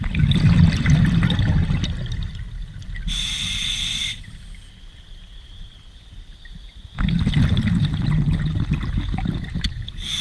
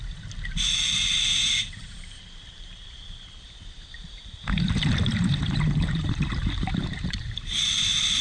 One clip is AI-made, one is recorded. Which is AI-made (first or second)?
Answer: second